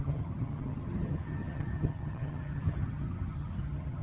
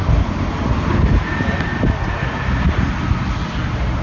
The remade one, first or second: first